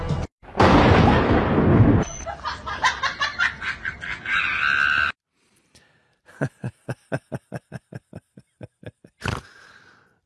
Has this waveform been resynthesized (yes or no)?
no